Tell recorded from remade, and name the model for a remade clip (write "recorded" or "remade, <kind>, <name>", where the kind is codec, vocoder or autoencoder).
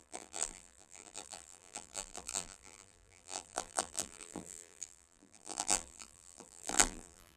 remade, vocoder, BigVGAN v2